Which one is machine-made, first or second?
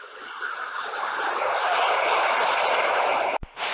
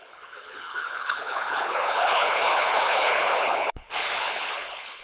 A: second